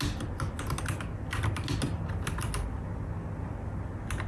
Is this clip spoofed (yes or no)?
no